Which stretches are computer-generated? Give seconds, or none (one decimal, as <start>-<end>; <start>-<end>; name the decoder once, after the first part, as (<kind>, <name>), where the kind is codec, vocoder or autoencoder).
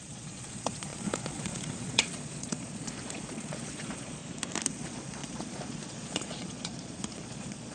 0.0-4.2 (vocoder, Vocos); 4.7-7.7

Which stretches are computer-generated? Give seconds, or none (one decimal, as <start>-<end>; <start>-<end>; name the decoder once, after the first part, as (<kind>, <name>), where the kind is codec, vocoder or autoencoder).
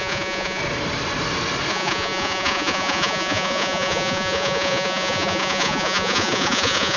0.0-0.6 (vocoder, Vocos); 1.7-7.0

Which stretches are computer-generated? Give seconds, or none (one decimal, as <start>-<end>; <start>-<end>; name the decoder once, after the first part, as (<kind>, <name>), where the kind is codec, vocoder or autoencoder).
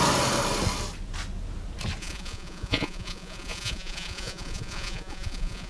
2.0-5.7 (vocoder, Vocos)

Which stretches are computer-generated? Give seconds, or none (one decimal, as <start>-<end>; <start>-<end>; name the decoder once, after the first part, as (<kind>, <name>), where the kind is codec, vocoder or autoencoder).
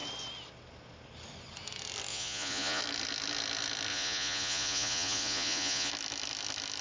2.1-2.8 (vocoder, Vocos); 3.9-5.9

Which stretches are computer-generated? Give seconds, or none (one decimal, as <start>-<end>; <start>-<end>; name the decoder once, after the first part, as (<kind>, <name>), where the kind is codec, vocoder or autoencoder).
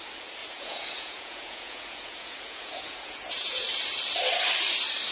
0.4-3.5 (vocoder, Vocos)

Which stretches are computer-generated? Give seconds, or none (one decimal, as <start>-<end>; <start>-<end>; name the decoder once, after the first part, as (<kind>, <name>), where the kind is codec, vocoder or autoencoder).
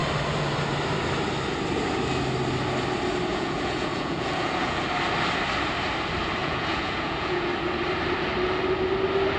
3.3-4.8 (vocoder, Vocos); 6.4-7.5